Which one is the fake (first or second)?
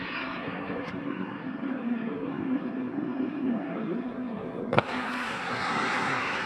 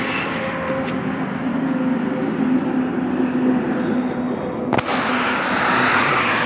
first